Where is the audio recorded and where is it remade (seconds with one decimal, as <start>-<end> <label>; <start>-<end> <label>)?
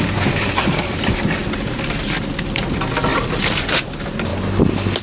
0.0-4.3 remade; 4.3-5.0 recorded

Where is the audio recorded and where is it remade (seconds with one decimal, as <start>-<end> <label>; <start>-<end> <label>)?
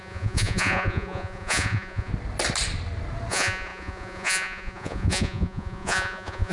0.0-2.1 remade; 2.1-3.3 recorded; 3.3-6.5 remade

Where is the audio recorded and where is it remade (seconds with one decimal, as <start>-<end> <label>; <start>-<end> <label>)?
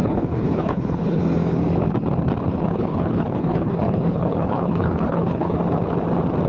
0.0-1.2 remade; 1.2-2.5 recorded; 2.5-5.6 remade; 5.6-6.5 recorded